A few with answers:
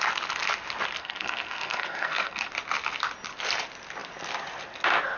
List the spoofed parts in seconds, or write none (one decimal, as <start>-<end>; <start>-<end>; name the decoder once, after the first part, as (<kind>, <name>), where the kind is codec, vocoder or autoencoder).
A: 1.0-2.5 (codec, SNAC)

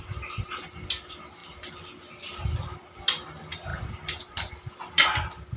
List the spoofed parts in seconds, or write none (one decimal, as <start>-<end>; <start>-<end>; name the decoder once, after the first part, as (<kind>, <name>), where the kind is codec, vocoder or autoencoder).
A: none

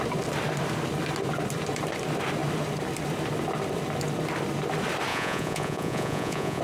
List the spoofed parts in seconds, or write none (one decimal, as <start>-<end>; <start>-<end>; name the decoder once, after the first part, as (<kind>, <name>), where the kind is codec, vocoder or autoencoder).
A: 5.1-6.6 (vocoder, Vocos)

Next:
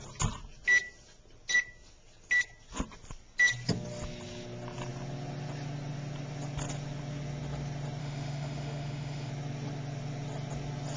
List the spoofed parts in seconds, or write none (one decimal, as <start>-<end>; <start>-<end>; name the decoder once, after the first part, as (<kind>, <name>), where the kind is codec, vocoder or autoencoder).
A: 8.0-9.3 (autoencoder, DAC-VAE)

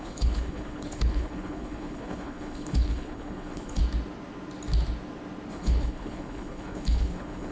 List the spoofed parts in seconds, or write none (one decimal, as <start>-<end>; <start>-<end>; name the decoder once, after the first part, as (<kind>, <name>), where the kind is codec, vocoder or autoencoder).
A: 0.0-3.8 (codec, HILCodec); 5.5-7.5

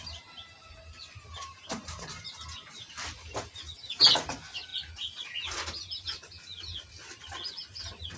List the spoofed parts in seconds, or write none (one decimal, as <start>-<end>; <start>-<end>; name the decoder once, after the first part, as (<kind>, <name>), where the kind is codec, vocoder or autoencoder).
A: none

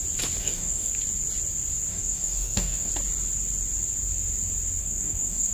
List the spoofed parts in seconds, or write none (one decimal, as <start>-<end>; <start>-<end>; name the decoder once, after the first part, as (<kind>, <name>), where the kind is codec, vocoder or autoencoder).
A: 0.4-0.9 (codec, DAC); 1.9-2.9; 4.8-5.5